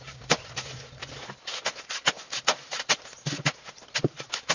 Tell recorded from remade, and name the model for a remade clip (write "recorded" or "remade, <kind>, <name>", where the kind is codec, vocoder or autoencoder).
recorded